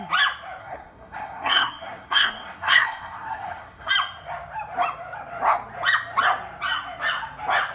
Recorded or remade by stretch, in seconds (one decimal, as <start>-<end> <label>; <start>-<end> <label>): 0.0-0.6 recorded; 0.6-3.9 remade; 3.9-7.7 recorded